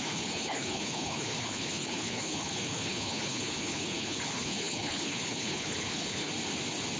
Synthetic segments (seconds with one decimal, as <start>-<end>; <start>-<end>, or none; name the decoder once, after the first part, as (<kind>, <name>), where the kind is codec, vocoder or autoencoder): 0.0-6.3 (codec, HILCodec)